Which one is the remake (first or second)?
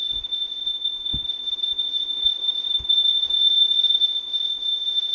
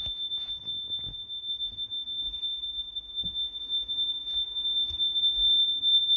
first